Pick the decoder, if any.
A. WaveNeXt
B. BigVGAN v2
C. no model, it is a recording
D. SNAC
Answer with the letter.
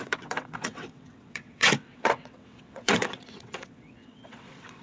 A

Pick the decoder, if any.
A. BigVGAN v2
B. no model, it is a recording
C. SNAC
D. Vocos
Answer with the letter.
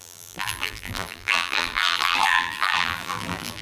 A